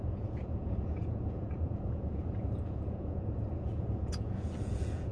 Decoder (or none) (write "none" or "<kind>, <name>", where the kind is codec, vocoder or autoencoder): vocoder, Vocos